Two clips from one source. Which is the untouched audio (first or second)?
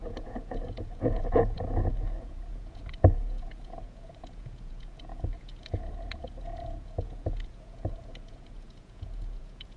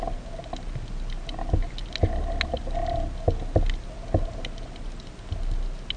second